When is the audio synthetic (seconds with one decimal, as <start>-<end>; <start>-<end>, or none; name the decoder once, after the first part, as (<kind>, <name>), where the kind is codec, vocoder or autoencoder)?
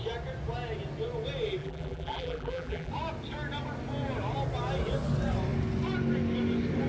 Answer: 1.6-2.9 (vocoder, BigVGAN v2)